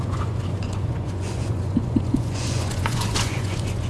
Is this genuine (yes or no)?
no